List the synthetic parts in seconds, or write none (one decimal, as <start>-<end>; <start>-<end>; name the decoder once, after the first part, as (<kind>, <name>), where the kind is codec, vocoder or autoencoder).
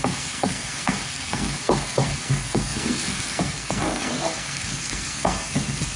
0.0-6.0 (codec, SNAC)